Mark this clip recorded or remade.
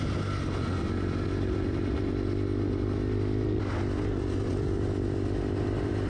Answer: recorded